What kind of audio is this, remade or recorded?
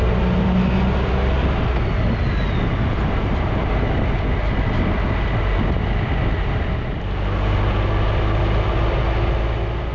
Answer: recorded